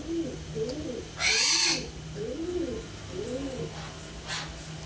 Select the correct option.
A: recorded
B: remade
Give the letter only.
A